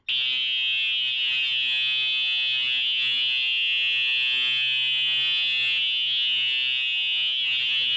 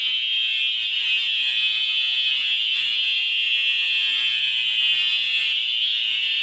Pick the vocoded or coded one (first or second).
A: second